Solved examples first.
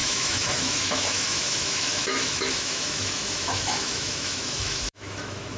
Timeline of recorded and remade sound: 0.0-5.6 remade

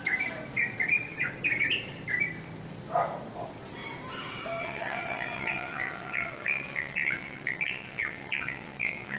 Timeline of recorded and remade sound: 0.0-4.6 recorded; 4.6-9.2 remade

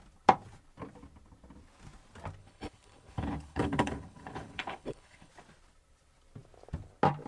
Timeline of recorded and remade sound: 0.0-2.4 recorded; 2.4-5.3 remade; 5.3-7.3 recorded

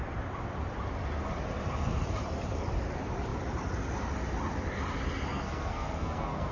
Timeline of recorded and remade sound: 0.0-5.3 recorded; 5.3-6.5 remade

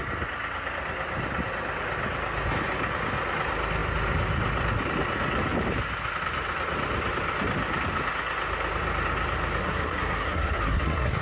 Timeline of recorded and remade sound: 0.0-9.6 recorded; 9.6-11.2 remade

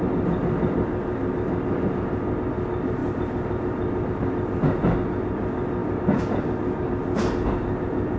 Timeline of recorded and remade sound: 0.0-8.2 recorded

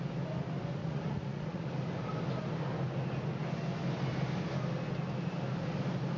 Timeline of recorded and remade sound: 0.0-0.8 recorded; 0.8-1.7 remade; 1.7-6.2 recorded